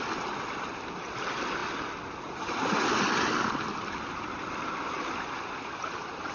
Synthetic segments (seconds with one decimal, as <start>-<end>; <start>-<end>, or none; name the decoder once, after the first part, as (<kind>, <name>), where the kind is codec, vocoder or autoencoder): none